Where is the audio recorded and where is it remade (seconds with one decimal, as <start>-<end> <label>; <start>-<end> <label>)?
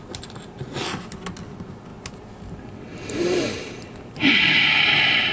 0.0-5.3 recorded